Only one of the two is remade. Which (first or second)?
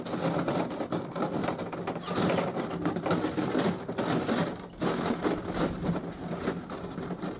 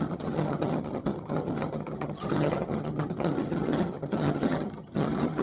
second